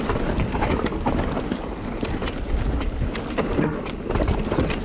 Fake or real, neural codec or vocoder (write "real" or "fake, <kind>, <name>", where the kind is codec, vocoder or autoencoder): real